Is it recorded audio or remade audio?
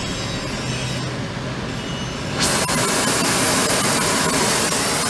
recorded